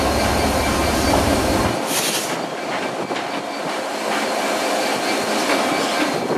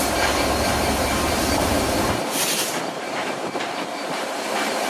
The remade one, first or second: second